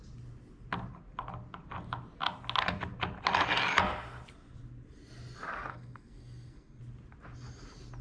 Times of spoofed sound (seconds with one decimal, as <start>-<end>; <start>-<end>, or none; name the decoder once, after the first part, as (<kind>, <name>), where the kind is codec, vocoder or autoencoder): 5.7-6.8 (codec, SNAC)

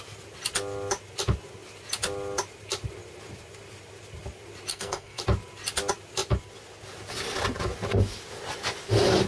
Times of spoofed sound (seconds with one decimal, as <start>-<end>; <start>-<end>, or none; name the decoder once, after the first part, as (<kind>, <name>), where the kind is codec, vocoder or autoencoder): 4.7-5.2 (codec, SNAC)

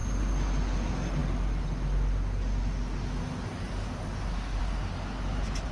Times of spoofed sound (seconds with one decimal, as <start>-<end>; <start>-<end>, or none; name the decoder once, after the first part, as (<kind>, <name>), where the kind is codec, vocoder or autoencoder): none

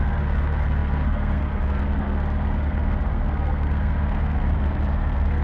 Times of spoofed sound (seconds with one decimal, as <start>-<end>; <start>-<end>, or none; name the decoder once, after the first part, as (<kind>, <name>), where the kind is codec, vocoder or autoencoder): 0.0-5.4 (codec, SNAC)

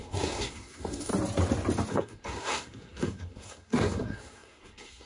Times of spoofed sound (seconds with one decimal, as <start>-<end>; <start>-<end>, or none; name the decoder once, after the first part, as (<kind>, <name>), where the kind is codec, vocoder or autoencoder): 0.0-1.1 (codec, SNAC); 1.9-5.1

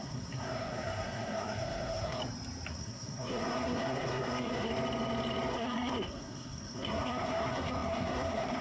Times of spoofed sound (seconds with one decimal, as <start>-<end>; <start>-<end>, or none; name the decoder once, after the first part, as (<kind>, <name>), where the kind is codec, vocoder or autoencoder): 0.0-2.2 (codec, SNAC); 2.7-4.7; 5.5-8.6